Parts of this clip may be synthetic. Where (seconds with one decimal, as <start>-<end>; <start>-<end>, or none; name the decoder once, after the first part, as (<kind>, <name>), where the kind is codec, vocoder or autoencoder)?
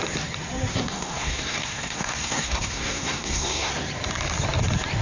0.7-3.7 (codec, SNAC)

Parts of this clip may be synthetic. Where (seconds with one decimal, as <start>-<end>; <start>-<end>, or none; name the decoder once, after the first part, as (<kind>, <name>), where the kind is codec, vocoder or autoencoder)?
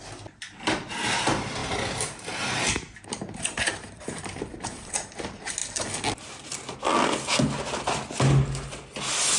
1.6-4.9 (vocoder, BigVGAN v2)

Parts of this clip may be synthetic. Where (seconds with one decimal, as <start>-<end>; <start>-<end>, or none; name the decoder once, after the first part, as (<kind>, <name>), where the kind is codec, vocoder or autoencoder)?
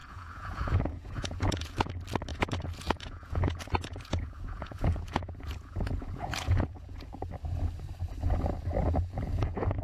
0.0-1.9 (vocoder, Vocos); 2.3-7.3; 8.8-9.8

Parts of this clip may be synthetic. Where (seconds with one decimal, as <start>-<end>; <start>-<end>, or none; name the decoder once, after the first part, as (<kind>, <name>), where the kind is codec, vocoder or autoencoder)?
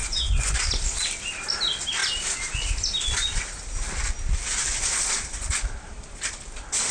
0.0-0.6 (vocoder, Vocos)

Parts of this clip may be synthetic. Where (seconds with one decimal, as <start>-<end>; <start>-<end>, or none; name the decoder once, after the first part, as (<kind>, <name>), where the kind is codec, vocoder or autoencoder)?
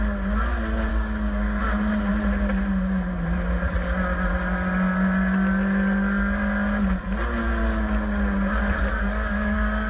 0.9-1.6 (codec, DAC); 8.9-9.9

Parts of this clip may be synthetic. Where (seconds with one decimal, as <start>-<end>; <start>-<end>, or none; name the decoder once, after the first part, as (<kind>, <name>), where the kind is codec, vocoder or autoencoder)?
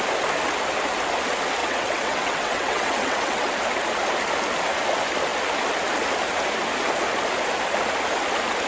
1.6-3.5 (vocoder, WaveNeXt)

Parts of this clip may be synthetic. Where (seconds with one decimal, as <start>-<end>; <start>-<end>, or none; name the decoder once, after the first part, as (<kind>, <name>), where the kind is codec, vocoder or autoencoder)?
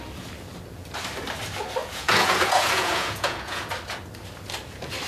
1.8-3.7 (vocoder, Vocos)